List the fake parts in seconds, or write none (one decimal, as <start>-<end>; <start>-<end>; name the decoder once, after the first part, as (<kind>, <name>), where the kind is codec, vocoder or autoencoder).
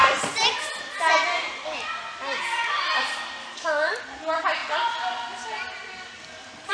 3.4-4.0 (codec, DAC)